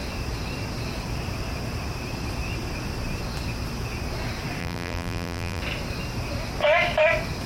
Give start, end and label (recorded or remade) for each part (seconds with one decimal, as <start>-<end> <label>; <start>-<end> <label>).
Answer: 0.0-4.6 recorded; 4.6-5.6 remade; 5.6-7.5 recorded